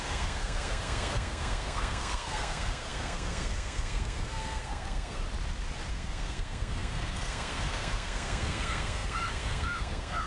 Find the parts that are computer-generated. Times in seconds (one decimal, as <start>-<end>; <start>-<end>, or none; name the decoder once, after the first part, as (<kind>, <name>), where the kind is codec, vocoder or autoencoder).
0.0-5.2 (codec, SNAC); 5.9-10.3